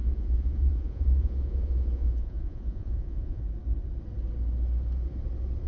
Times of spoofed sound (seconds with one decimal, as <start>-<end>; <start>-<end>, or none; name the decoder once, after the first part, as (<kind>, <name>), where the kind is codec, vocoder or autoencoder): 0.0-3.4 (vocoder, Vocos)